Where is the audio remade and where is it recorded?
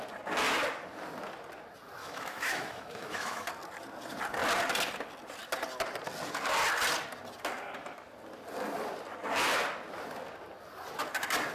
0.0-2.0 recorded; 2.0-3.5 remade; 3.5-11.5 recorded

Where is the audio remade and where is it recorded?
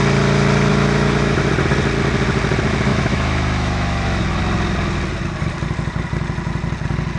0.0-0.7 recorded; 0.7-1.5 remade; 1.5-2.9 recorded; 2.9-4.4 remade; 4.4-7.2 recorded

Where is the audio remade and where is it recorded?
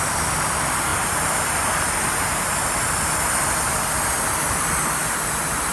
0.0-5.7 recorded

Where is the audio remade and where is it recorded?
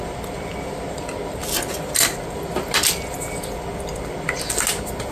0.0-5.1 recorded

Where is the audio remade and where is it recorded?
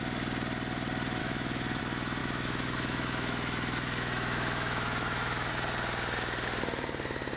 0.0-1.2 recorded; 1.2-1.8 remade; 1.8-2.2 recorded; 2.2-5.5 remade; 5.5-7.4 recorded